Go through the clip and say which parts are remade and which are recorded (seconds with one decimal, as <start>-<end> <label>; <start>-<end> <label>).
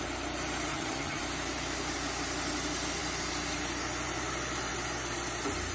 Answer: 0.0-0.7 recorded; 0.7-1.2 remade; 1.2-5.7 recorded